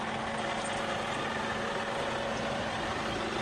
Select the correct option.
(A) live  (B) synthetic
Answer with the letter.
A